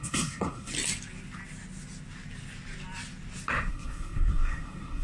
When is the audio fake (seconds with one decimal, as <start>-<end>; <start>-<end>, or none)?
0.0-0.7; 3.7-5.0